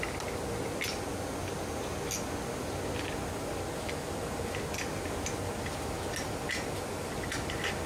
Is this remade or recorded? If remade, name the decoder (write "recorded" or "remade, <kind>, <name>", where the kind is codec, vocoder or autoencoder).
recorded